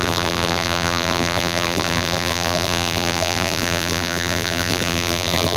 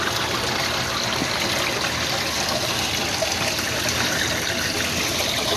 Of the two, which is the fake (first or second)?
first